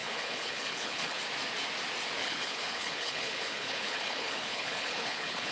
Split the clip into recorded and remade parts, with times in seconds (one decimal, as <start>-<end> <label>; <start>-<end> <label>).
0.0-1.2 remade; 1.2-2.2 recorded; 2.2-5.5 remade